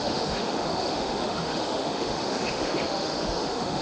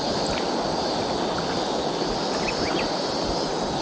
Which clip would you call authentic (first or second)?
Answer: second